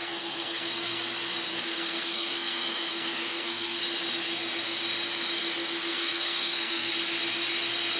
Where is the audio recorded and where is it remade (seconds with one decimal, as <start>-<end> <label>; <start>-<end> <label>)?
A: 0.0-1.0 remade; 1.0-1.5 recorded; 1.5-3.8 remade; 3.8-5.9 recorded; 5.9-6.9 remade; 6.9-8.0 recorded